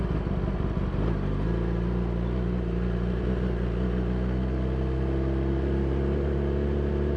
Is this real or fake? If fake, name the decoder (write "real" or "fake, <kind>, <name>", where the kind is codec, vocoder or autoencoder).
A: real